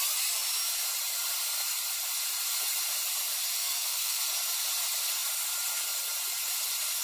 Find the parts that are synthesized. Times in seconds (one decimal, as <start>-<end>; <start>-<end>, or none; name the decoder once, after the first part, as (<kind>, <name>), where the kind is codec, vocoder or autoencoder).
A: 3.6-4.2 (codec, SNAC)